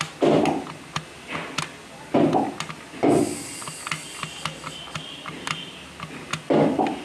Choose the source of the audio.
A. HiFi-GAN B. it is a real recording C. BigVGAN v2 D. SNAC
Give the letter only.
B